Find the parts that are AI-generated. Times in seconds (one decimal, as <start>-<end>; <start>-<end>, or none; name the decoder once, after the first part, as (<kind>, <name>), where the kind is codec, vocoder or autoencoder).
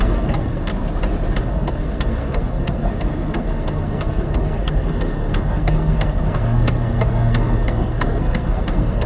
0.0-0.7 (codec, SNAC); 1.4-9.1